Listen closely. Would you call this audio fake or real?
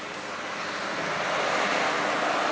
real